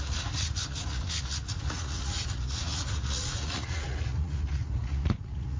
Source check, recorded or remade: remade